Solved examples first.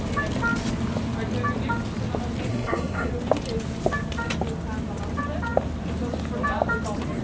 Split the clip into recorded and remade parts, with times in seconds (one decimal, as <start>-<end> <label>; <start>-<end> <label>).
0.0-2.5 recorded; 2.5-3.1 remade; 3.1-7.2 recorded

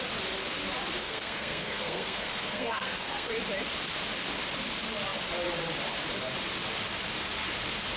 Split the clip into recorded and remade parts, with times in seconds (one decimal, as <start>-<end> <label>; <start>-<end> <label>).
0.0-1.0 recorded; 1.0-3.3 remade; 3.3-8.0 recorded

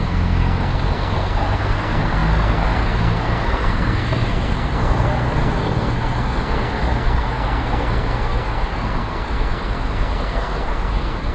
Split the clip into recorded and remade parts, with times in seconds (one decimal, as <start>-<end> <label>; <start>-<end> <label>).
0.0-11.3 remade

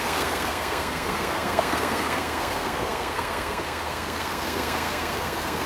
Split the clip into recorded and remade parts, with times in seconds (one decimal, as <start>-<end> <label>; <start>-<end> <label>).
0.0-5.7 remade